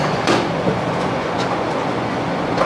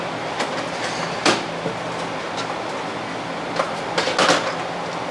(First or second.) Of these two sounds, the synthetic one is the first